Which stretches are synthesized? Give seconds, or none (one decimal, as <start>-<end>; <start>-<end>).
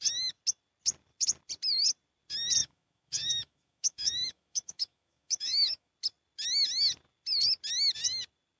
2.6-5.9